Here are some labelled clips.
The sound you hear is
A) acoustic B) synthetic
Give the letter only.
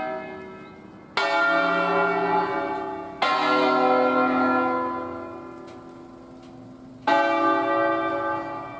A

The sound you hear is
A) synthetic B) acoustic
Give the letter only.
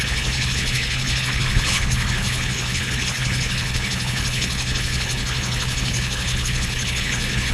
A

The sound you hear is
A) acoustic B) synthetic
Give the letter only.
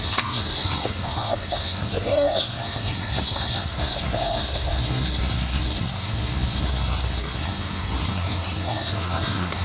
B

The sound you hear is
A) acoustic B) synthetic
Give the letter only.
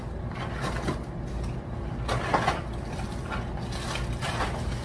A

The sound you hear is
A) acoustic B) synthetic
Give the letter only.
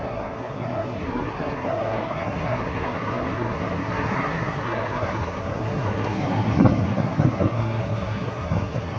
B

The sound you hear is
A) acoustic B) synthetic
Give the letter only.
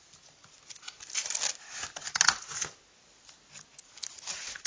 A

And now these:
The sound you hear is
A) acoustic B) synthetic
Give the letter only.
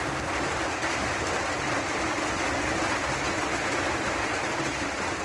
A